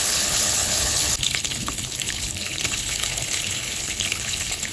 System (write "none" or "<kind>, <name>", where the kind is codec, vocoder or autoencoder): codec, HILCodec